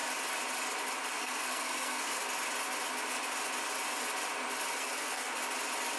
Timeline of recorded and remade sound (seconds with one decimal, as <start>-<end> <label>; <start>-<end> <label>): 0.0-1.1 recorded; 1.1-2.2 remade; 2.2-4.7 recorded; 4.7-5.4 remade; 5.4-6.0 recorded